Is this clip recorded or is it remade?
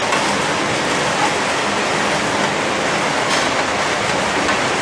recorded